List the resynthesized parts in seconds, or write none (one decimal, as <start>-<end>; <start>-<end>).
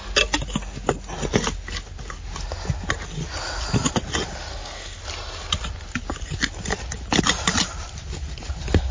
4.5-5.0